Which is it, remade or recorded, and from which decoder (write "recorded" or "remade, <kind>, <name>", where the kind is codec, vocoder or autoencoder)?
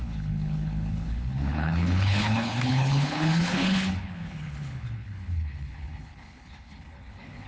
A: remade, codec, HILCodec